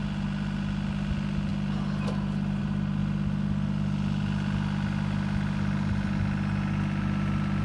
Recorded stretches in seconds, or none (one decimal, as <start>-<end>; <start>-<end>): 0.0-7.6